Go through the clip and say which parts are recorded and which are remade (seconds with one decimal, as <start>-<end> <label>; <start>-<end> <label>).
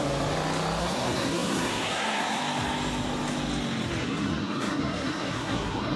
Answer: 0.0-0.8 recorded; 0.8-2.4 remade; 2.4-4.0 recorded; 4.0-6.0 remade